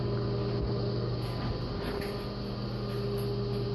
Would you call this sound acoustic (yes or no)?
yes